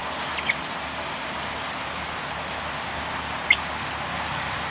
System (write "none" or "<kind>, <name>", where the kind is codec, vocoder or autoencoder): none